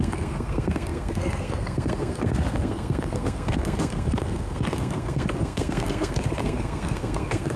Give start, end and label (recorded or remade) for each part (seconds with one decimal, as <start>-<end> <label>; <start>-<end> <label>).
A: 0.0-7.6 remade